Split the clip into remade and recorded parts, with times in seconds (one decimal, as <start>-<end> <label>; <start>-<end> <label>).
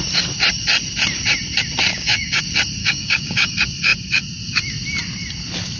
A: 0.0-1.9 recorded; 1.9-2.4 remade; 2.4-2.8 recorded; 2.8-3.5 remade; 3.5-5.8 recorded